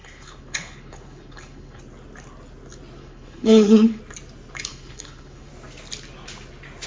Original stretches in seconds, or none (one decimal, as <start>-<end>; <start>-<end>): 1.8-3.0; 4.0-4.7; 5.5-6.9